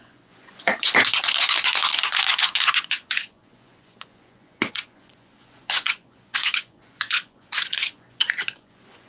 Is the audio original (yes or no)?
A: no